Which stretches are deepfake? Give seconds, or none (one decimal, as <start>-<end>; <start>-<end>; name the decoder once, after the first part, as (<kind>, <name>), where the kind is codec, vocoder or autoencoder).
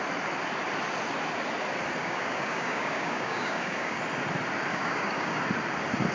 2.0-4.0 (codec, DAC); 4.7-5.4